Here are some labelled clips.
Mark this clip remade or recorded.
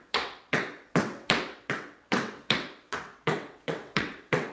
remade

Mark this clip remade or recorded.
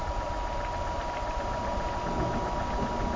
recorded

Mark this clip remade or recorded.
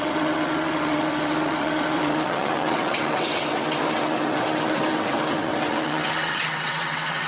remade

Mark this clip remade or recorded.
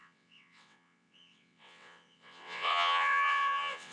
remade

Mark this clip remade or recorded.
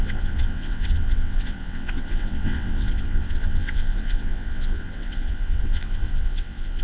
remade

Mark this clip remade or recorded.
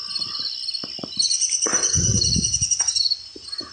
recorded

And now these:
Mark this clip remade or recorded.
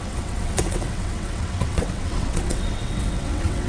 remade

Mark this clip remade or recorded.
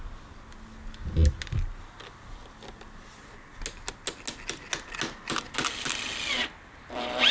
recorded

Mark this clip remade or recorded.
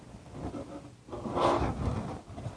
recorded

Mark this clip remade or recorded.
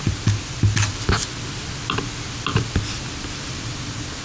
recorded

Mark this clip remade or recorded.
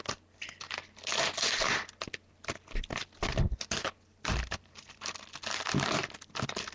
recorded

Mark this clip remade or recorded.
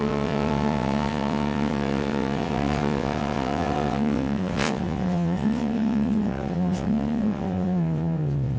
remade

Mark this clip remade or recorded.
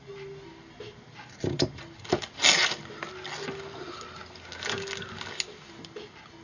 recorded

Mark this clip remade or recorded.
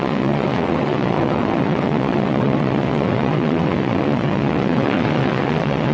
remade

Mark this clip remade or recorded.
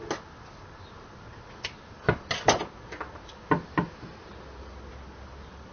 recorded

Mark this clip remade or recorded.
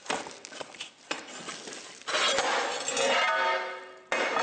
recorded